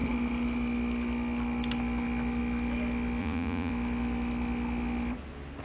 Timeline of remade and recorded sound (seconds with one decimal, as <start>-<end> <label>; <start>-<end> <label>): 0.0-3.2 recorded; 3.2-3.7 remade; 3.7-5.6 recorded